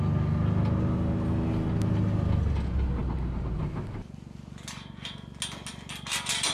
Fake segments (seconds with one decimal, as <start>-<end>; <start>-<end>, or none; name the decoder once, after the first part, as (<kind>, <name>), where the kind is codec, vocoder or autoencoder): none